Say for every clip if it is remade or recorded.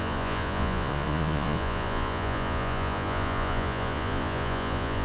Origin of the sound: remade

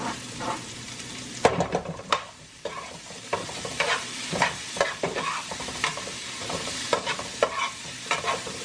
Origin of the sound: remade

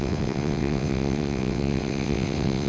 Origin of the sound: remade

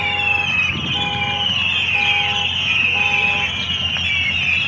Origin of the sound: recorded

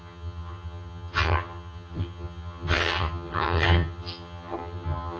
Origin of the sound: remade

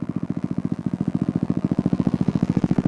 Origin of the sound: remade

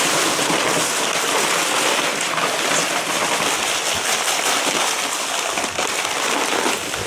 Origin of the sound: recorded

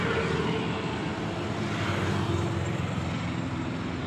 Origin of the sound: recorded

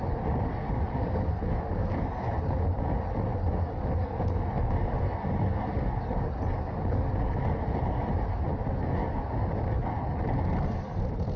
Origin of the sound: recorded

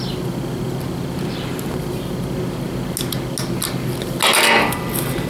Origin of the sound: recorded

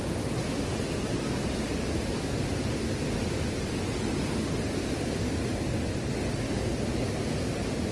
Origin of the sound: recorded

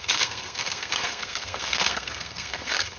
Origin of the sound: remade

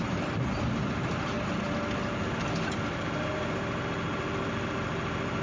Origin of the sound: recorded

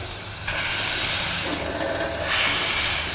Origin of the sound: recorded